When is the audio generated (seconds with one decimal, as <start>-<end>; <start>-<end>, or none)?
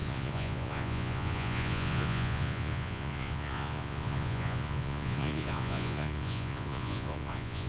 0.0-7.7